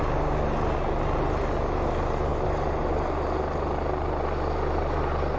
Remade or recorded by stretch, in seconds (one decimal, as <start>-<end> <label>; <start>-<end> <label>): 0.0-5.4 recorded